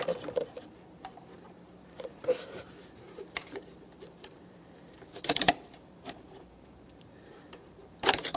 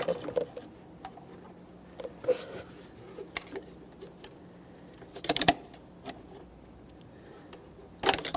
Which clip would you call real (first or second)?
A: second